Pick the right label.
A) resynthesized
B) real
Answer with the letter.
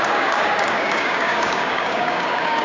A